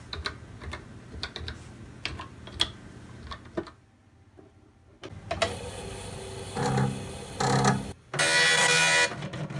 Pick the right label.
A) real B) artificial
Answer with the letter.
A